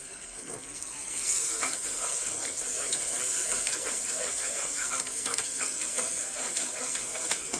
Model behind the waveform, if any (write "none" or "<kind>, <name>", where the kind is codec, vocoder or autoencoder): codec, SNAC